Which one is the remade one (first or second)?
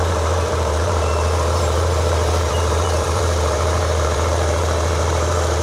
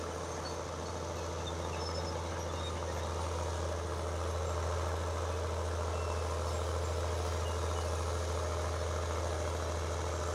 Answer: first